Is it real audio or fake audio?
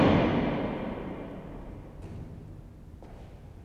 real